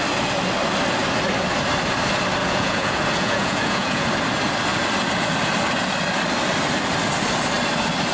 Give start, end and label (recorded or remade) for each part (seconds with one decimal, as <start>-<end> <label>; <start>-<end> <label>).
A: 0.0-2.4 recorded; 2.4-4.1 remade; 4.1-8.1 recorded